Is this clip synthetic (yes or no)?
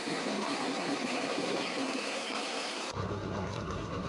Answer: yes